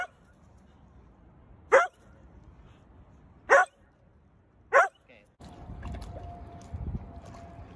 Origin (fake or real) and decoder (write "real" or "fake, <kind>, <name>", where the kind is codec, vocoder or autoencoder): real